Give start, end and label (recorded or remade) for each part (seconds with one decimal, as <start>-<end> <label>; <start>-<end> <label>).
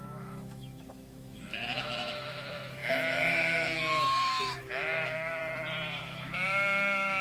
0.0-5.4 remade; 5.4-6.0 recorded; 6.0-7.2 remade